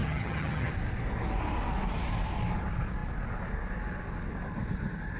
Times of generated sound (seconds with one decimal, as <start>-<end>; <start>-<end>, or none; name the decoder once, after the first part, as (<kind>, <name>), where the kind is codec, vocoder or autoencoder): 0.0-0.7 (vocoder, HiFi-GAN)